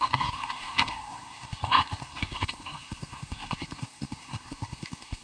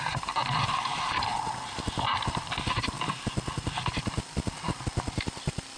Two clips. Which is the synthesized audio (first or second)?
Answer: first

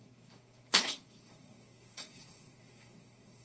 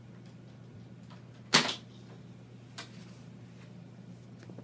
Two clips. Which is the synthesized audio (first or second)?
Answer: first